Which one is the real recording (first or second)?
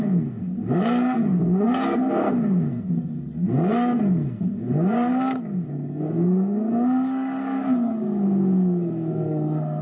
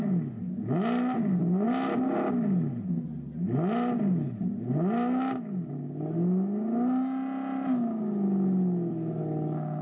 second